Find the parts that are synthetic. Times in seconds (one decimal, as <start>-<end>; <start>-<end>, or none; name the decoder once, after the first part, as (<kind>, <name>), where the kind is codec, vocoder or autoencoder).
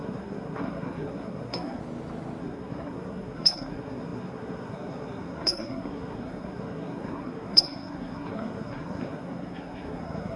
0.0-1.8 (codec, SNAC); 2.4-10.4